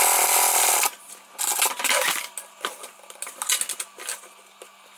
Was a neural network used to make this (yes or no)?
no